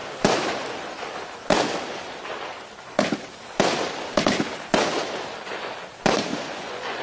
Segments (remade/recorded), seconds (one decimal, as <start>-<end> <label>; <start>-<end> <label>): 0.0-6.3 recorded; 6.3-7.0 remade